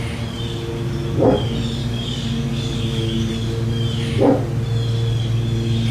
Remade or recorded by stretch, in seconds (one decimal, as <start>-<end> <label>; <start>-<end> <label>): 0.0-1.8 recorded; 1.8-3.3 remade; 3.3-5.9 recorded

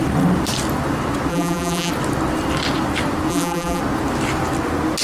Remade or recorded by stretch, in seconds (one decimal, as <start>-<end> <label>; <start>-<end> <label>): 0.0-1.3 recorded; 1.3-1.9 remade; 1.9-3.3 recorded; 3.3-3.8 remade; 3.8-5.0 recorded

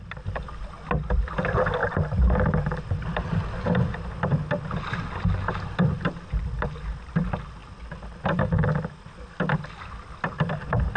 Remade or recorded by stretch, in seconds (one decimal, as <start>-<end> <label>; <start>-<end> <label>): 0.0-11.0 recorded

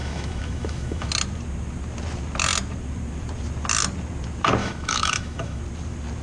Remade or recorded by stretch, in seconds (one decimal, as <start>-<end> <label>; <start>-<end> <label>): 0.0-1.1 remade; 1.1-4.6 recorded; 4.6-5.6 remade; 5.6-6.2 recorded

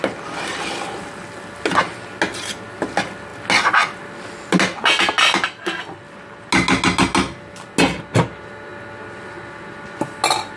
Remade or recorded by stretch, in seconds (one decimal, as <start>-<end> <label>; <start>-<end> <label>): 0.0-10.6 recorded

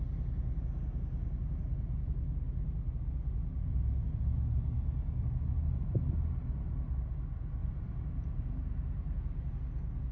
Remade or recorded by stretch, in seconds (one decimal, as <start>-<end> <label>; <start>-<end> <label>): 0.0-7.6 recorded; 7.6-9.5 remade; 9.5-10.1 recorded

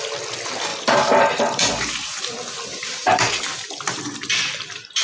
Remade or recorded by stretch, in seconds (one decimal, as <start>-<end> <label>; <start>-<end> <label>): 0.0-0.7 recorded; 0.7-2.2 remade; 2.2-2.7 recorded; 2.7-3.4 remade; 3.4-5.0 recorded

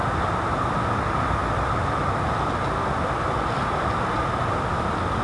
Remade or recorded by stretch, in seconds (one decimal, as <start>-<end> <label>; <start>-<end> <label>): 0.0-5.2 recorded